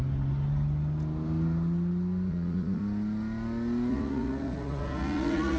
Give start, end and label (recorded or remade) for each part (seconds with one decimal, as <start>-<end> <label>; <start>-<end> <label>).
0.0-2.3 recorded; 2.3-2.8 remade; 2.8-3.9 recorded; 3.9-5.6 remade